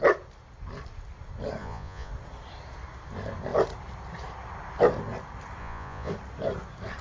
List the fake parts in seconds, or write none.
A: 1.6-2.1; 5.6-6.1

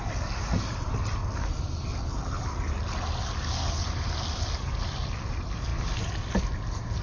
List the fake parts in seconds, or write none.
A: none

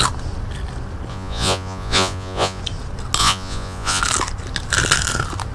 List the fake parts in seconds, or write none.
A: 1.1-2.6; 3.2-4.0

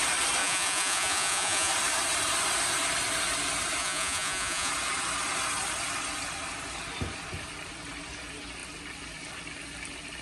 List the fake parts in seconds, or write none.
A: 0.4-1.7; 3.8-4.7

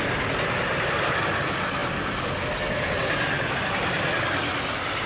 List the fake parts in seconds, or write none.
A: none

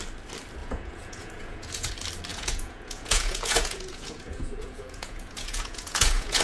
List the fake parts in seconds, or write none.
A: 0.6-1.9; 2.3-6.4

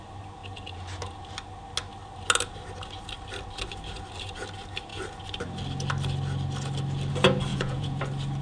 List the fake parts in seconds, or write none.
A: 7.5-8.0

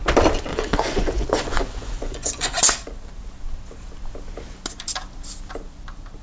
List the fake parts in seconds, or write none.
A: 0.5-2.6